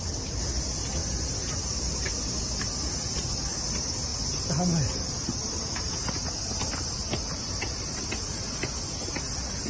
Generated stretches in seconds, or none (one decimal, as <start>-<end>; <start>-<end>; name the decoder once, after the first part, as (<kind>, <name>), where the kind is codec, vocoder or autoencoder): none